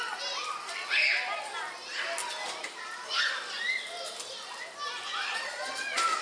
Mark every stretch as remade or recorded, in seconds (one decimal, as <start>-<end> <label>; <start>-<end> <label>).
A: 0.0-6.2 recorded